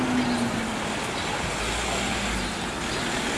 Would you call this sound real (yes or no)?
yes